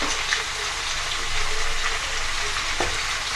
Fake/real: real